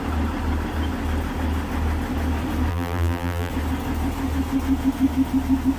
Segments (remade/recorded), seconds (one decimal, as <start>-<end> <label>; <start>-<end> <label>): 0.0-2.7 recorded; 2.7-3.5 remade; 3.5-5.8 recorded